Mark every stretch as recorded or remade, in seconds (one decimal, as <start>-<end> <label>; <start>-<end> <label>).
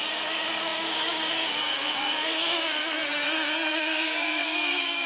0.0-3.0 remade; 3.0-3.7 recorded; 3.7-5.1 remade